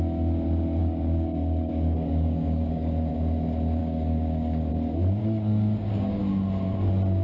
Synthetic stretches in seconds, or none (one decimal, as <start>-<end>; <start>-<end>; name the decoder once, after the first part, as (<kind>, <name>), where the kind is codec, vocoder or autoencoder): 0.8-3.1 (codec, DAC); 3.8-4.7; 5.2-6.2